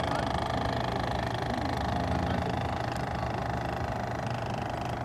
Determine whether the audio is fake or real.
real